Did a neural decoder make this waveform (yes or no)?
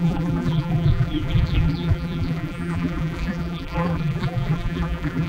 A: yes